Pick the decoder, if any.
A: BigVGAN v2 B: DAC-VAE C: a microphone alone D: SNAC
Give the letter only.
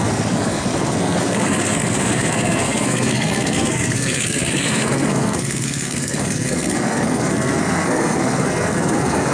D